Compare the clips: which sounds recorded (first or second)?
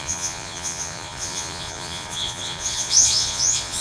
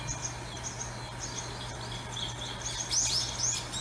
second